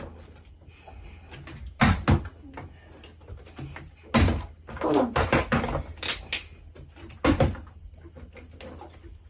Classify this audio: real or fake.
real